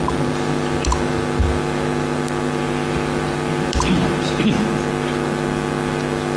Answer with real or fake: real